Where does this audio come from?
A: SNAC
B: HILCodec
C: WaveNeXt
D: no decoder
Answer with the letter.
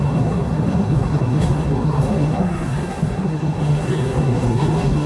A